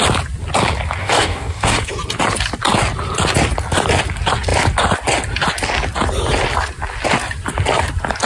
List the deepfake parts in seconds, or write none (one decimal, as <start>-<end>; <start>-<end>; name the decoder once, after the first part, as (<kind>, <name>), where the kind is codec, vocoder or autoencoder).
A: 1.0-1.9 (codec, DAC)